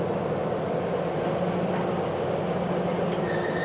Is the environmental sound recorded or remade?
recorded